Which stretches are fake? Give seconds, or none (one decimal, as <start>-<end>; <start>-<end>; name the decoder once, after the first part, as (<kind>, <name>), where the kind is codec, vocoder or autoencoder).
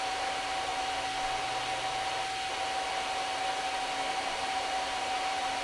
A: 0.0-0.7 (vocoder, BigVGAN v2); 4.1-5.6